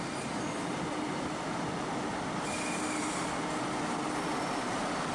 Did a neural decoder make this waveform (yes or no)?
no